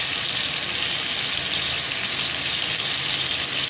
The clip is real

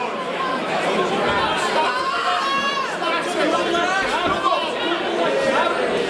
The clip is real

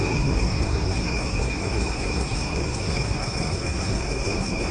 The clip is fake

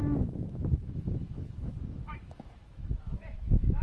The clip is fake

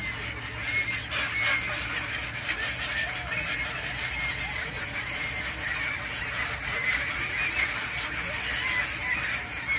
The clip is real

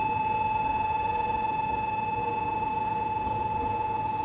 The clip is real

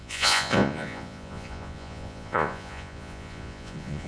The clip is fake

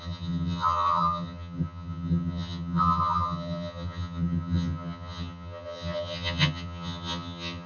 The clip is fake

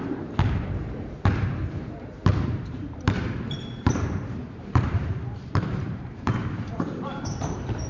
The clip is fake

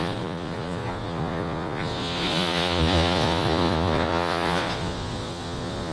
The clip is fake